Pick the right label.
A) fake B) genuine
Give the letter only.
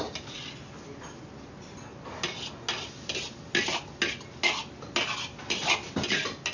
B